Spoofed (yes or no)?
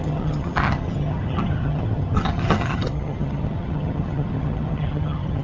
yes